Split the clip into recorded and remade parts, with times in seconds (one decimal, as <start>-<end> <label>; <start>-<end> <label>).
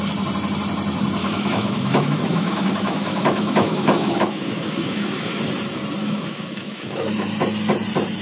0.0-1.2 recorded; 1.2-5.4 remade; 5.4-6.0 recorded; 6.0-7.0 remade; 7.0-8.2 recorded